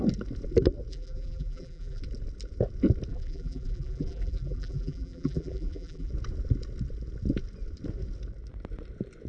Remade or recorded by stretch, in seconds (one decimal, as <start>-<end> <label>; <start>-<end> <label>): 0.0-0.9 recorded; 0.9-2.0 remade; 2.0-3.1 recorded; 3.1-6.1 remade; 6.1-9.3 recorded